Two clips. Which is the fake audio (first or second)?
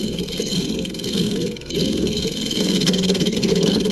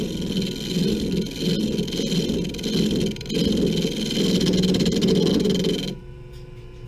first